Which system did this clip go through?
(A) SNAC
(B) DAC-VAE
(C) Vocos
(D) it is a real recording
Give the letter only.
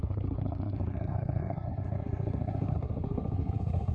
A